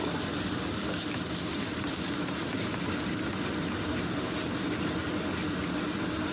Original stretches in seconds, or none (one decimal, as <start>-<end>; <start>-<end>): 0.0-1.5; 4.4-6.3